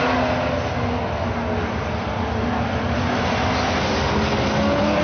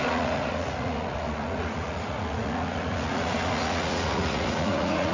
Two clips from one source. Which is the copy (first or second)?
second